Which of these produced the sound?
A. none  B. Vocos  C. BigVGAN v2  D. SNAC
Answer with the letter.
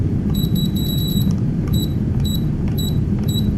C